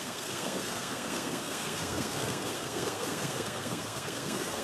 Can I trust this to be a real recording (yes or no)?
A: no